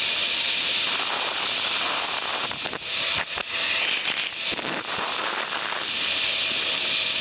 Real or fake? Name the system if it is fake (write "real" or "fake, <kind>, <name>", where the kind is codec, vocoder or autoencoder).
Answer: real